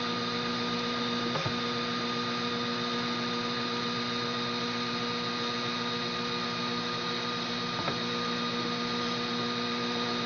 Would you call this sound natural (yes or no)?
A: yes